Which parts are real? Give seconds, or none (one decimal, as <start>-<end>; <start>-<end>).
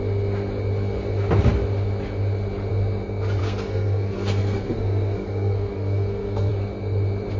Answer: 0.0-3.4; 6.5-7.4